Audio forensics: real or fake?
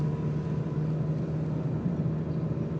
real